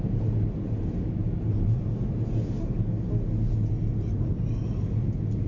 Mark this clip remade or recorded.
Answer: recorded